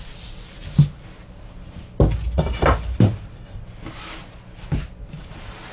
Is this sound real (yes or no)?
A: yes